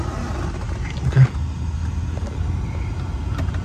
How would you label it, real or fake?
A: real